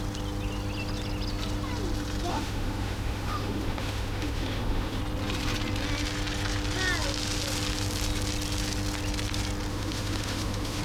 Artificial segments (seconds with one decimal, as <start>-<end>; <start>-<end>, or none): 2.3-5.0; 9.7-10.8